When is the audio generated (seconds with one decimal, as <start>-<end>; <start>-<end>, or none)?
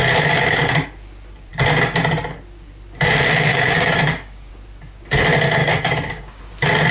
3.5-4.5; 5.6-6.4